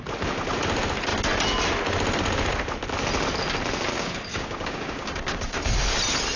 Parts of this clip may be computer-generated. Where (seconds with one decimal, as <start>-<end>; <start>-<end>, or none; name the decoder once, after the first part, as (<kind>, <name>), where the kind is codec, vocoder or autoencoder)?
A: 3.9-5.6 (codec, DAC)